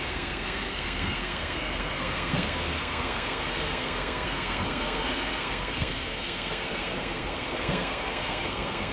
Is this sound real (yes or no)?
no